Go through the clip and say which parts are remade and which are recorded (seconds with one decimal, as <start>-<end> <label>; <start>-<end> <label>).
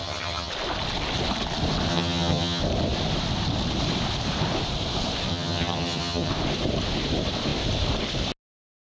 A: 0.0-0.5 remade; 0.5-1.9 recorded; 1.9-2.6 remade; 2.6-5.3 recorded; 5.3-6.3 remade; 6.3-8.9 recorded